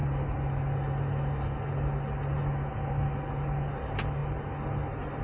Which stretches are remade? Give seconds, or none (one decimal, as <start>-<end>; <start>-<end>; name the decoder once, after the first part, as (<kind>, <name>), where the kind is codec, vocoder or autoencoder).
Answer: none